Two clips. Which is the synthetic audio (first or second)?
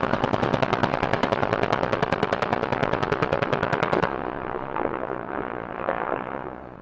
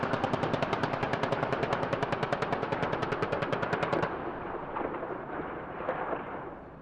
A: first